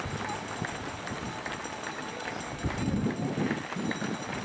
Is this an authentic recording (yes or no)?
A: yes